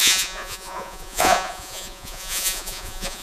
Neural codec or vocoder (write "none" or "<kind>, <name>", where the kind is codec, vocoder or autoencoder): vocoder, Vocos